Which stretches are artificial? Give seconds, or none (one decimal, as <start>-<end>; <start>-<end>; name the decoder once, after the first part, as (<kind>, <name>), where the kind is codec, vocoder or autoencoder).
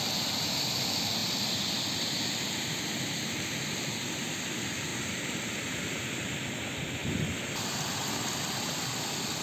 none